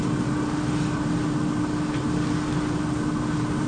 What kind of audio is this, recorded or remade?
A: recorded